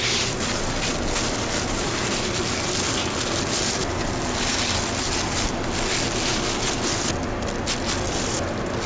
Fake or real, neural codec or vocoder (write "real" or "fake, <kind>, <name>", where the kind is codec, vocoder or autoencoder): real